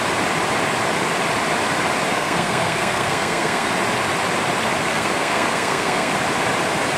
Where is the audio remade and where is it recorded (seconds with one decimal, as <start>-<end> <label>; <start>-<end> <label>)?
0.0-2.1 recorded; 2.1-3.7 remade; 3.7-4.9 recorded; 4.9-6.1 remade; 6.1-7.0 recorded